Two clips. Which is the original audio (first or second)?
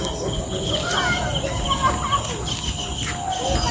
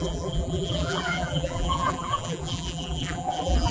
first